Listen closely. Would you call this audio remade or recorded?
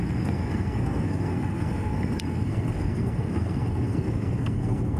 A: remade